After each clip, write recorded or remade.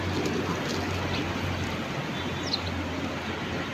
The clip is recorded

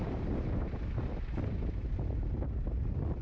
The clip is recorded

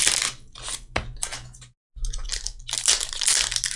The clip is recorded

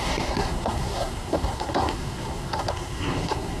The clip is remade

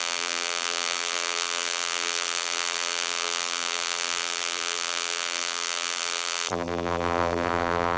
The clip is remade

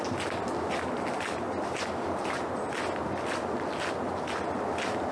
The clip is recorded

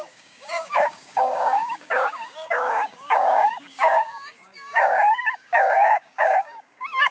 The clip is remade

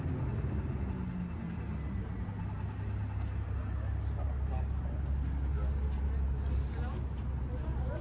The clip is recorded